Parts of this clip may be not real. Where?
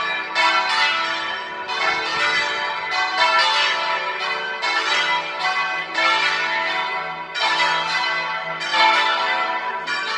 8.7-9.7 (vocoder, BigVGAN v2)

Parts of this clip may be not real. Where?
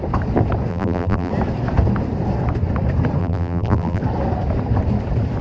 0.7-1.3 (vocoder, BigVGAN v2); 3.2-4.0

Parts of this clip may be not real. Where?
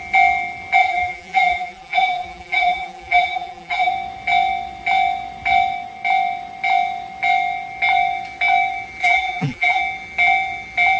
0.8-3.9 (vocoder, BigVGAN v2); 9.0-9.8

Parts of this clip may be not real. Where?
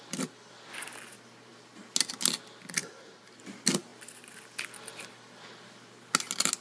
none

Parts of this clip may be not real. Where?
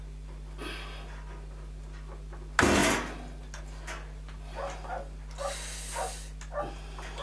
none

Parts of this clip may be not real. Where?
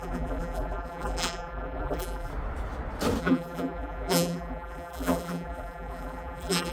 0.0-2.3 (vocoder, BigVGAN v2); 3.2-6.7